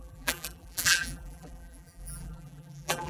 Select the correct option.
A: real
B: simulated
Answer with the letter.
B